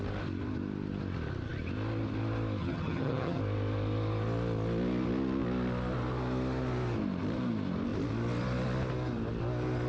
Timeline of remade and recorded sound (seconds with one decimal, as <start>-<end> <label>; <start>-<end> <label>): 0.0-2.6 recorded; 2.6-3.4 remade; 3.4-9.9 recorded